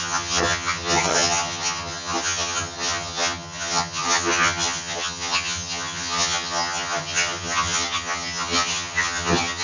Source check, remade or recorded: remade